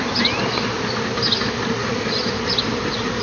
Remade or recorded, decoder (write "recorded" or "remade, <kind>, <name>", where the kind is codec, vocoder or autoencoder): recorded